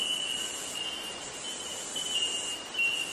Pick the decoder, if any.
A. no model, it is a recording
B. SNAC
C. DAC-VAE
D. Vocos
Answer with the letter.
A